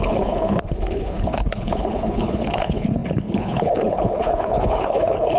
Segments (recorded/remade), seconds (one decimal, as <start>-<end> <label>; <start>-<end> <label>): 0.0-5.4 remade